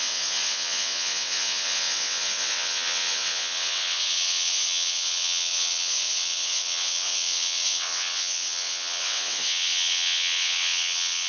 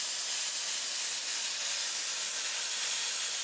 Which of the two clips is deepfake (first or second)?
first